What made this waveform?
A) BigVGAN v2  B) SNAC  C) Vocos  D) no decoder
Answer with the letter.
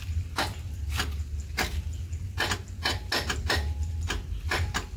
D